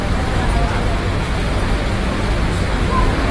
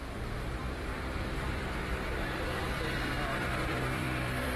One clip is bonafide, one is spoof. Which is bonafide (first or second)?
first